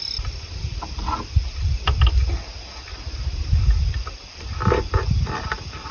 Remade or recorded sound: recorded